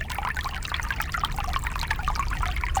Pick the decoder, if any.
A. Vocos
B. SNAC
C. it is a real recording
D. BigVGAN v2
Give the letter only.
C